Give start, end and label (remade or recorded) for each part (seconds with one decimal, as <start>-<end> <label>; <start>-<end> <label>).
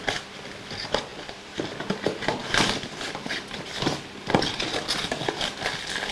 0.0-1.1 recorded; 1.1-1.7 remade; 1.7-6.1 recorded